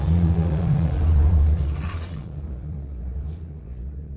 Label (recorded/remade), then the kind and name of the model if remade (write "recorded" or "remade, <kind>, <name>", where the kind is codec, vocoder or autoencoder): remade, vocoder, Vocos